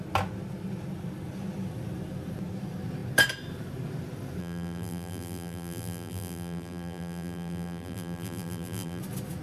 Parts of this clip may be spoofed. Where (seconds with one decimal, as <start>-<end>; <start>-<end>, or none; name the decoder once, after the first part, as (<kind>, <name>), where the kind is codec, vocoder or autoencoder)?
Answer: 4.4-9.0 (vocoder, BigVGAN v2)